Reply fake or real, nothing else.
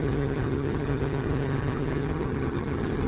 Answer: fake